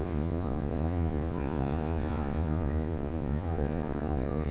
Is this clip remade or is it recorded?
remade